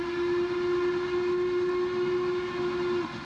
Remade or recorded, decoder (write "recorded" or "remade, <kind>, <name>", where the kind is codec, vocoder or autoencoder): recorded